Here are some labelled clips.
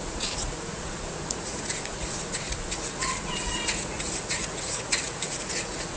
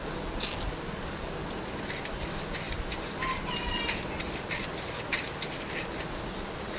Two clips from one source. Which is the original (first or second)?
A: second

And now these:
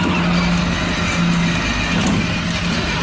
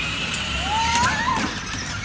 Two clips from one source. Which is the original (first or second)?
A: first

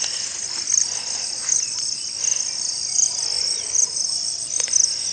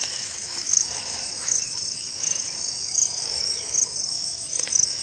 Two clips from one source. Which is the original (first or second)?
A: first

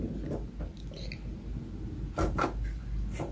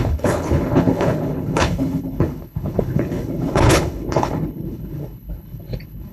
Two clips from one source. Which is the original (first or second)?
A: first